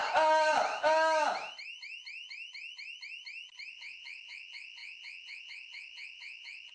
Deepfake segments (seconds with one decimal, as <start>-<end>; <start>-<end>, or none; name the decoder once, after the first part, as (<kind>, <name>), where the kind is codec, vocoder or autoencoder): 3.7-6.7 (vocoder, WaveNeXt)

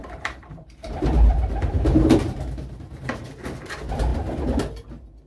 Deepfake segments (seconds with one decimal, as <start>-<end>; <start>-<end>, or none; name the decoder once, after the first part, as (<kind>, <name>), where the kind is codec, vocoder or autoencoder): 0.0-3.2 (vocoder, BigVGAN v2)

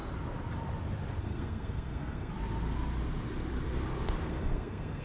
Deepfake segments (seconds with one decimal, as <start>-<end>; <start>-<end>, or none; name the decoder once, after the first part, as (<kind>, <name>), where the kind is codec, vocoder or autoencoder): 1.2-2.3 (codec, SNAC); 4.3-5.0

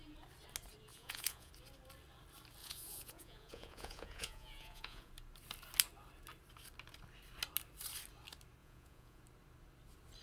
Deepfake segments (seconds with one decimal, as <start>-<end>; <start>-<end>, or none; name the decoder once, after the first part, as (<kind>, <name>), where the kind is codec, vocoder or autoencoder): 0.9-1.5 (vocoder, Vocos); 2.6-5.1; 8.6-9.2

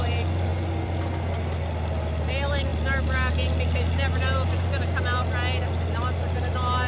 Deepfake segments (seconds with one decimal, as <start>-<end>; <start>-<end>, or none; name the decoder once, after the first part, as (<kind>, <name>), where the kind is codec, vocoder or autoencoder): none

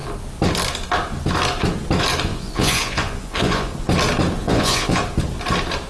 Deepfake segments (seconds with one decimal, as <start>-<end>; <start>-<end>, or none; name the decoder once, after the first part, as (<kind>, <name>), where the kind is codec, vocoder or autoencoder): 2.3-3.7 (vocoder, Vocos); 4.4-5.0

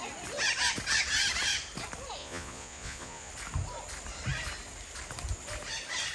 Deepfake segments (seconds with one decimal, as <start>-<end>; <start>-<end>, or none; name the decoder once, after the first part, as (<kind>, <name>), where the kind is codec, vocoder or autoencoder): 2.2-3.3 (vocoder, Vocos)